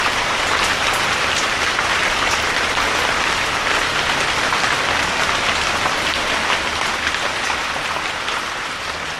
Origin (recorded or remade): remade